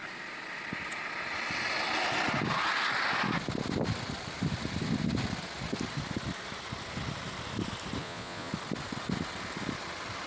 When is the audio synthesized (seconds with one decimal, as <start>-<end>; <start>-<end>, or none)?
8.0-8.5